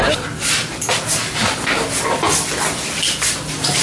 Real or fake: real